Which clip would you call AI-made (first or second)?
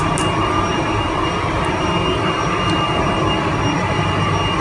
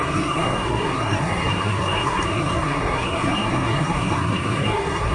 second